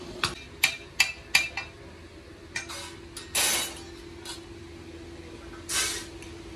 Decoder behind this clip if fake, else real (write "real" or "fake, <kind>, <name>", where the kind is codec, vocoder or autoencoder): real